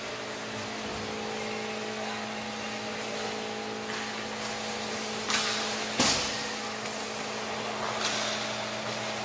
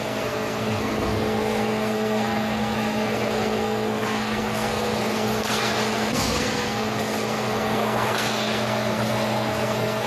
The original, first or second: first